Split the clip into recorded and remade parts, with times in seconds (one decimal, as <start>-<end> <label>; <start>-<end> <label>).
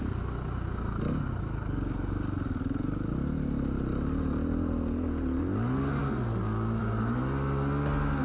0.0-8.2 recorded